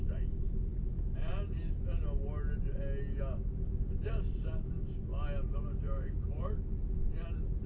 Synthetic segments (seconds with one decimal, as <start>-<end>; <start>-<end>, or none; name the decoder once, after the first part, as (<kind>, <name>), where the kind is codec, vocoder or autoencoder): none